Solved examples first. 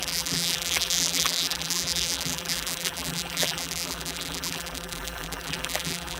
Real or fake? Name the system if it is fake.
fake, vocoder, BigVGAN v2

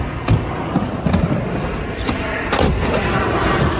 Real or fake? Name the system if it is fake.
fake, vocoder, BigVGAN v2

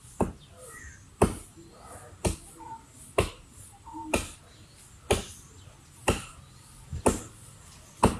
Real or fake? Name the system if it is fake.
real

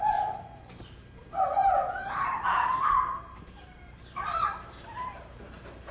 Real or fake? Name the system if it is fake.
fake, vocoder, BigVGAN v2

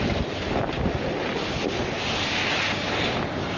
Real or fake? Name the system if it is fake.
real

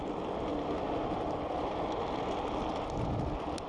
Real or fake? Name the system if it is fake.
real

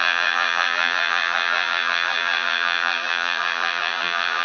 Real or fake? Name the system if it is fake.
fake, vocoder, BigVGAN v2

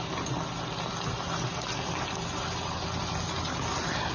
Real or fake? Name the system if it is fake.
real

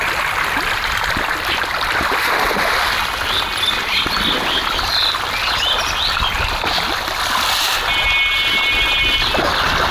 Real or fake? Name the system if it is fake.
real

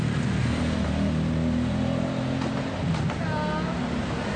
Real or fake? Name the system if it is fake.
real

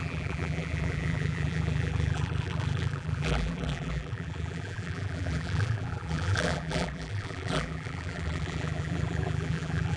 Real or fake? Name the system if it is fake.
fake, vocoder, BigVGAN v2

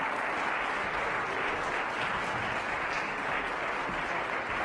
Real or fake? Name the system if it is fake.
real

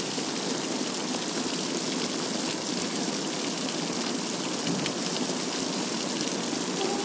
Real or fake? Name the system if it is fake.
real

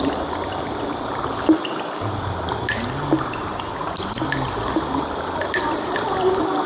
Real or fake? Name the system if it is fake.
real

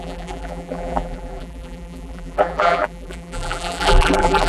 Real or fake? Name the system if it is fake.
fake, vocoder, BigVGAN v2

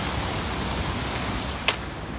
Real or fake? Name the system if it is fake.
real